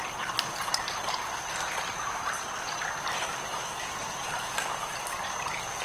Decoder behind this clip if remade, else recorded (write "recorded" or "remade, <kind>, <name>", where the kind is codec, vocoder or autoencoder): remade, vocoder, BigVGAN v2